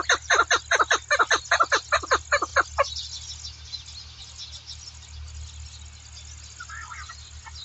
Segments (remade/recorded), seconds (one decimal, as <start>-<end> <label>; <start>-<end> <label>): 0.0-7.6 recorded